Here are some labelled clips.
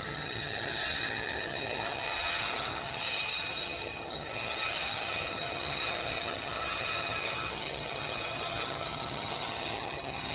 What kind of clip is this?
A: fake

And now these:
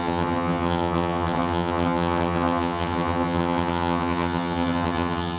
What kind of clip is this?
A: fake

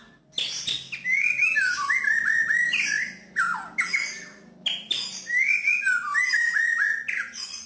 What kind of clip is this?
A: real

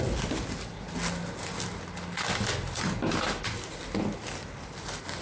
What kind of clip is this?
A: real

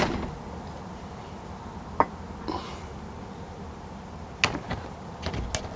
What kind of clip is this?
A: real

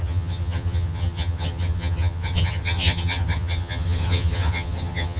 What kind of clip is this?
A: fake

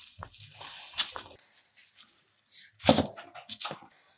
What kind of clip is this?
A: real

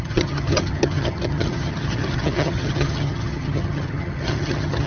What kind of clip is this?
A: fake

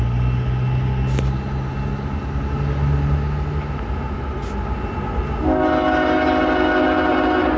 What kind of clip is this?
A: real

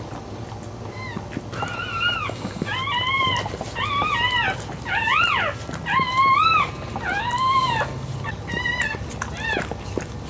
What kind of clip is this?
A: real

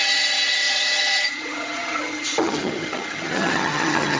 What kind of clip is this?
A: fake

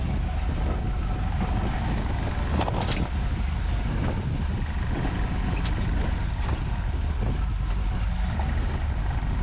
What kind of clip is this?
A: real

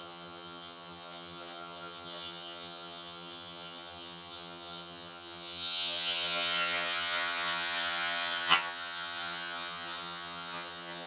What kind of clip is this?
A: fake